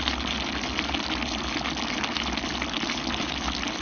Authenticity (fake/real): real